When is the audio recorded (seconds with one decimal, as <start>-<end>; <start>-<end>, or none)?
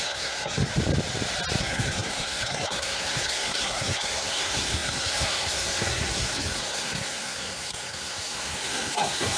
0.7-1.6